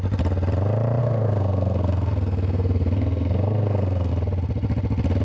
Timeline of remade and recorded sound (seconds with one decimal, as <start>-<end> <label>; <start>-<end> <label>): 0.0-1.0 recorded; 1.0-4.1 remade; 4.1-5.2 recorded